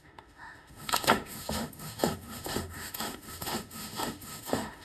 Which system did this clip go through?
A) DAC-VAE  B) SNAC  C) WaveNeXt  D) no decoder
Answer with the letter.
A